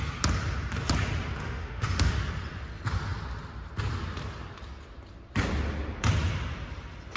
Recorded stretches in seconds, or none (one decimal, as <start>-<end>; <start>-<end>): 0.0-1.4; 2.1-7.2